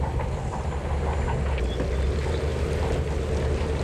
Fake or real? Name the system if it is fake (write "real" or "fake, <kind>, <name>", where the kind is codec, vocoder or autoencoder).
real